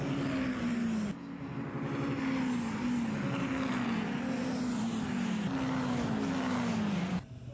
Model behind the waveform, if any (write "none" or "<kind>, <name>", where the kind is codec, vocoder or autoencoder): none